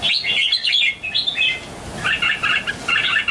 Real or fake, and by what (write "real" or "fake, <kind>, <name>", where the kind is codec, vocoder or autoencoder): real